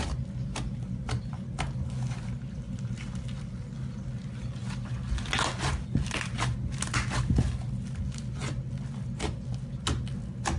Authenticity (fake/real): real